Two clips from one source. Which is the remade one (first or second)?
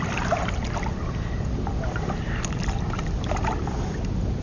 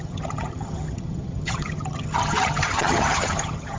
second